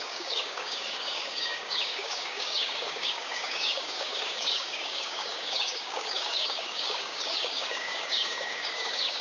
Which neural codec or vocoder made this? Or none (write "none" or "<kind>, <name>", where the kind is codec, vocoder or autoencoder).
codec, DAC